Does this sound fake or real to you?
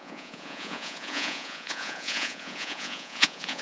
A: fake